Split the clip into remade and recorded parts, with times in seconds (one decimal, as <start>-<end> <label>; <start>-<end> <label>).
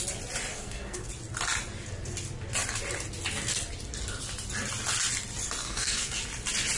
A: 0.0-0.5 recorded; 0.5-1.1 remade; 1.1-5.6 recorded; 5.6-6.2 remade; 6.2-6.8 recorded